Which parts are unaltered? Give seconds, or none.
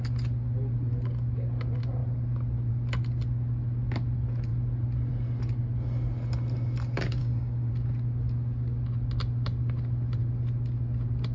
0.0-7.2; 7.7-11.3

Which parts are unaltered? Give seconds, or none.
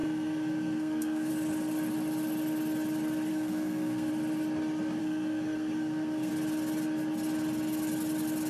1.3-3.3; 4.1-5.0; 6.3-8.5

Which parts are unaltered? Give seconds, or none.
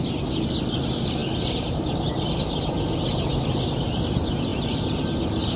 0.0-5.6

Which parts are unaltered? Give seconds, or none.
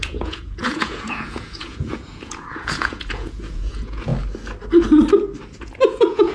4.1-5.6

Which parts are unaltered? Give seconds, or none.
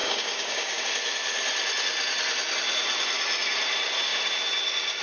0.8-5.0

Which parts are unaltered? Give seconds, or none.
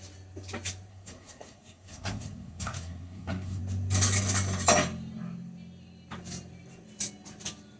0.0-0.9; 3.6-7.8